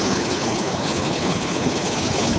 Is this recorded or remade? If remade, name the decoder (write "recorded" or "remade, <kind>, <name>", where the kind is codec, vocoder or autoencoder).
remade, codec, HILCodec